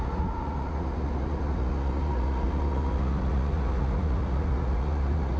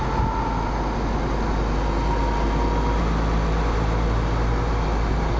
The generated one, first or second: first